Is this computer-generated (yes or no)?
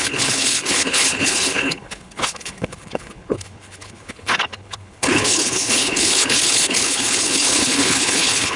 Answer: yes